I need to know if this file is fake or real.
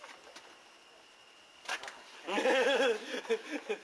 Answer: real